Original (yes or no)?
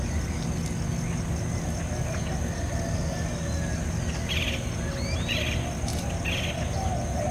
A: yes